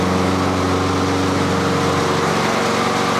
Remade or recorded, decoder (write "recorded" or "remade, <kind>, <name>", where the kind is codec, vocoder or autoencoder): recorded